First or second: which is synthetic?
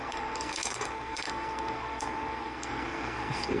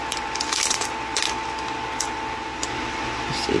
first